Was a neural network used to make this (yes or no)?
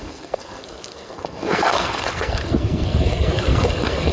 yes